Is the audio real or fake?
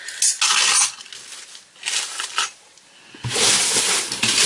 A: real